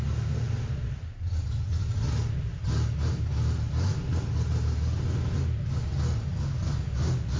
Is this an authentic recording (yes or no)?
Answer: yes